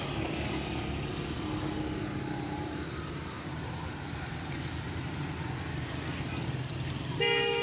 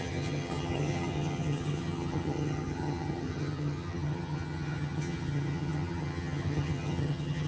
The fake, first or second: second